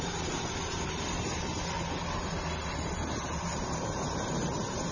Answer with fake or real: real